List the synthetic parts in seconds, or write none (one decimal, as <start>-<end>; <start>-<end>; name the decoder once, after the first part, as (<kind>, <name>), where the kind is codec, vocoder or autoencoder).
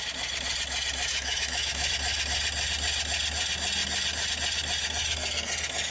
1.1-1.9 (autoencoder, DAC-VAE)